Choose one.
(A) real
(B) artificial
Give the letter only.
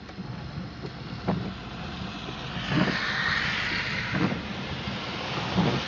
A